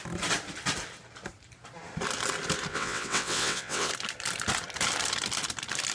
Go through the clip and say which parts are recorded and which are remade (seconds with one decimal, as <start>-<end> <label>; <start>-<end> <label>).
0.0-2.7 recorded; 2.7-3.9 remade; 3.9-5.9 recorded